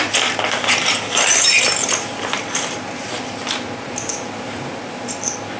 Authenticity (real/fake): real